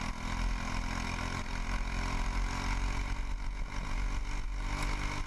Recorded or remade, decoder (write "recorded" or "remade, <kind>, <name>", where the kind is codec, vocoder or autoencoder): recorded